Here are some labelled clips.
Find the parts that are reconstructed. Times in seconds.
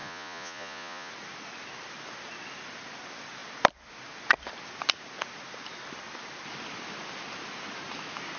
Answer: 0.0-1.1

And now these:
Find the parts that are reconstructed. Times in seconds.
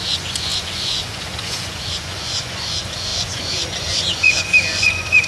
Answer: 0.0-5.3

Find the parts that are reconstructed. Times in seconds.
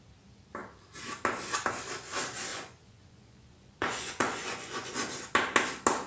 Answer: 2.5-4.9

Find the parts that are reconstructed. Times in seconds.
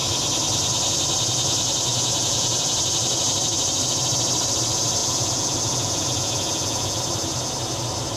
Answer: 1.9-2.7; 5.0-7.0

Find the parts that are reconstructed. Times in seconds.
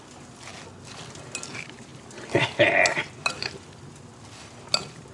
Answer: none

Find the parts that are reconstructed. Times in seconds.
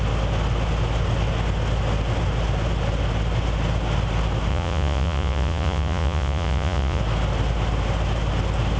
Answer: 4.5-7.0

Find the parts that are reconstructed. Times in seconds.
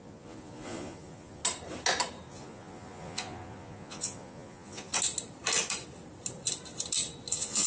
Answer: 0.0-1.4; 2.3-4.9; 7.3-7.7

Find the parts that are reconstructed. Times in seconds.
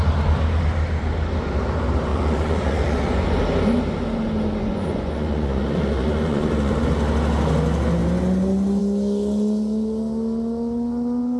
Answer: 2.1-3.4; 4.6-6.7